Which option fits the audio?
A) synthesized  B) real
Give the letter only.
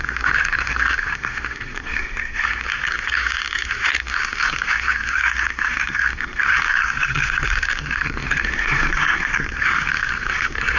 A